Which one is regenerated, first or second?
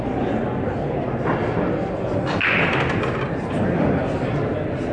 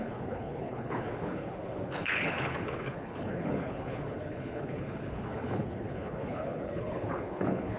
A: second